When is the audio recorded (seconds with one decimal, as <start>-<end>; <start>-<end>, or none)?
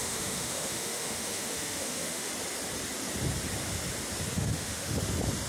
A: 2.3-4.3; 5.0-5.5